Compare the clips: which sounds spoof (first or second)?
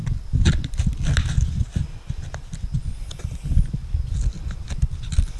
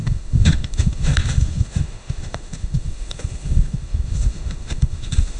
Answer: second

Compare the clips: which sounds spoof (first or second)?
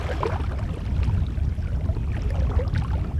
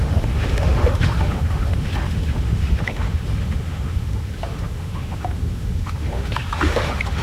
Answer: second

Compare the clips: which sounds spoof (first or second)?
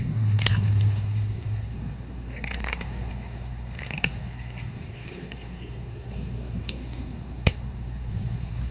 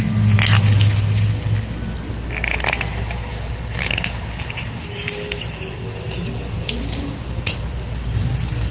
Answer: first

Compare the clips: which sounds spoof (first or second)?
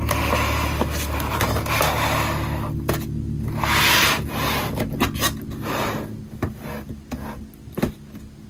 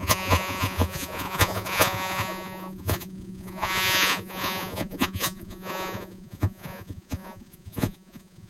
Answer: second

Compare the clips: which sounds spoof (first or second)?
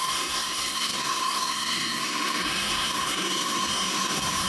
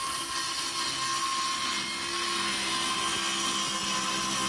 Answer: first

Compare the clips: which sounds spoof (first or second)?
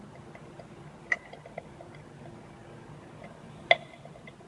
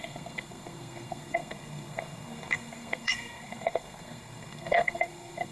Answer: second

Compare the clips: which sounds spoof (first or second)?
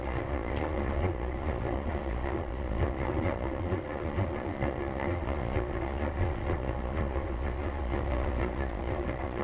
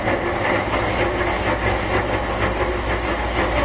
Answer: first